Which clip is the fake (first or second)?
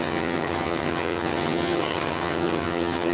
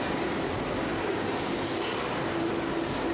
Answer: first